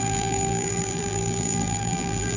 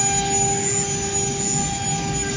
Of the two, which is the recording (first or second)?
second